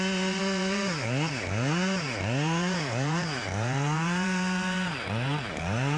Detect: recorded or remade remade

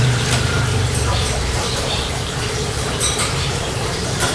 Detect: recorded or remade remade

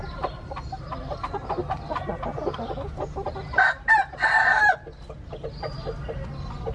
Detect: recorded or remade recorded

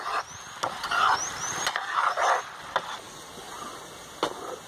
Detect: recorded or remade recorded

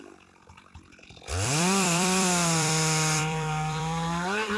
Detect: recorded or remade remade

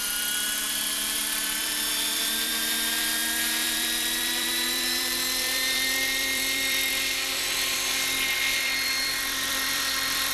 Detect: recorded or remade remade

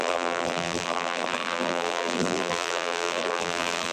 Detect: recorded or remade remade